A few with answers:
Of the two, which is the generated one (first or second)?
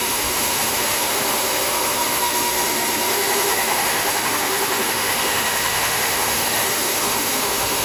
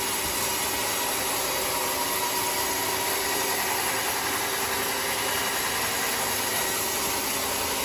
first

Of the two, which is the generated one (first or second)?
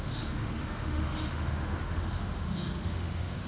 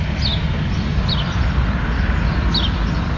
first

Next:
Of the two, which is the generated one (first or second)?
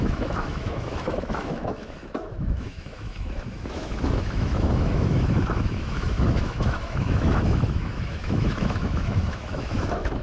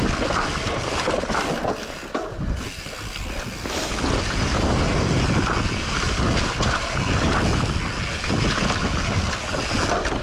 first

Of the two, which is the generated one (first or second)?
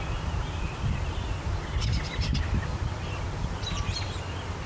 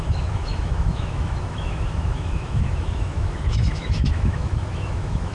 second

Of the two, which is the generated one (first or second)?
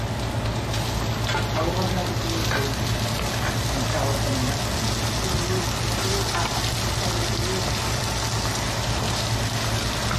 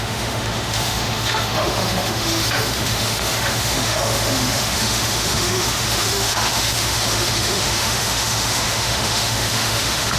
second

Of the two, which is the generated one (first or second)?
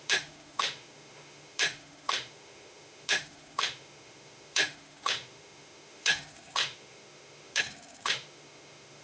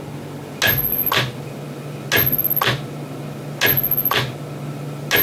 first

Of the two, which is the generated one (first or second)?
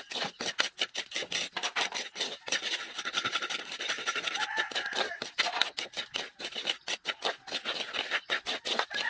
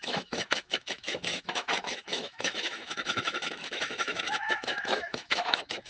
second